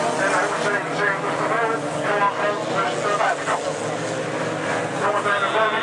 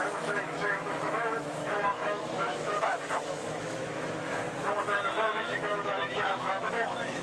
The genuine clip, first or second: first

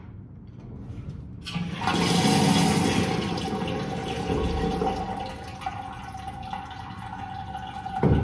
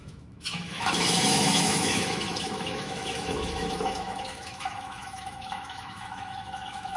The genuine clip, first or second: first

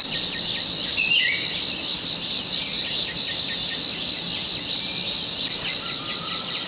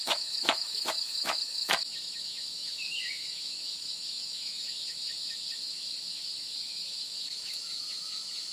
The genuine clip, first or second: first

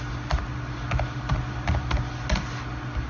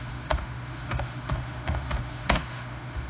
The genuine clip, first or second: first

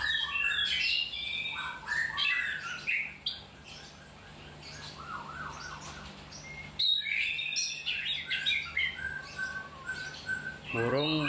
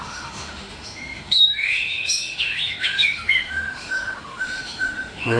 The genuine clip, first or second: first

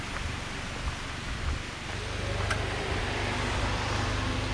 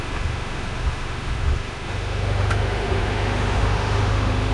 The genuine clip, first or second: first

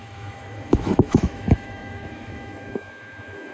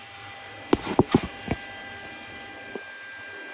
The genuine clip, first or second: second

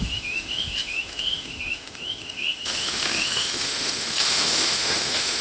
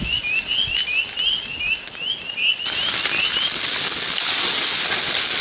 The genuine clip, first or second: second